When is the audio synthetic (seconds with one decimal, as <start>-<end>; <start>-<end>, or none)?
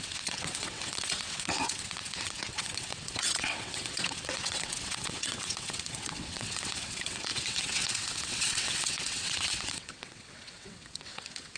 0.0-11.6